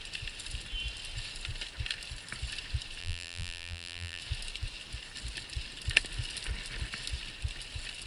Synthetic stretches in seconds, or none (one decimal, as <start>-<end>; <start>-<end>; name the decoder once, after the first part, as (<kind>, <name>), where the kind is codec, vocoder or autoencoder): 3.0-4.2 (vocoder, BigVGAN v2)